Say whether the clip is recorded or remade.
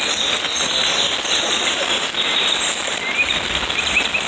recorded